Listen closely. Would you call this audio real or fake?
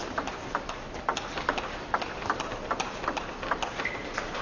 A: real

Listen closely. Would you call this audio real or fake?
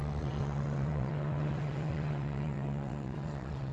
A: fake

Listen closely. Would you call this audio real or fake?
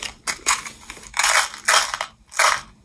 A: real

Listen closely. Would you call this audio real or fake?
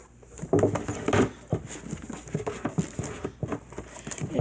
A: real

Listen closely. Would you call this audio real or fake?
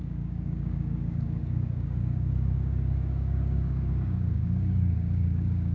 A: fake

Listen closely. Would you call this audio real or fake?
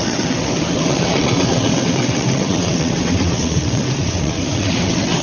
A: fake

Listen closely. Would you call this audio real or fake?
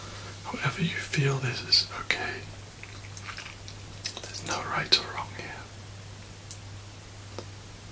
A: real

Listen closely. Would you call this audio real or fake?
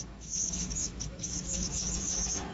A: fake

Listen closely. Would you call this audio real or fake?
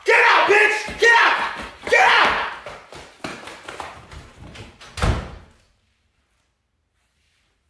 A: fake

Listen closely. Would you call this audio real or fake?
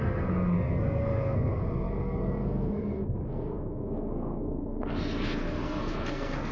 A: fake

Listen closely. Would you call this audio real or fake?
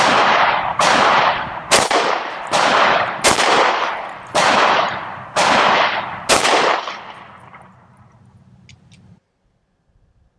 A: real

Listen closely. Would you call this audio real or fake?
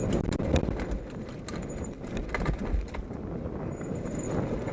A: real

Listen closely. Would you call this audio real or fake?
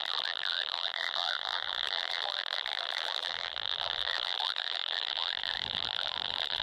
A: fake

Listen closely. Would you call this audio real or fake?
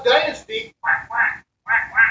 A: real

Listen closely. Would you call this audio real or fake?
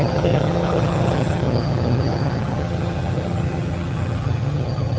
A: fake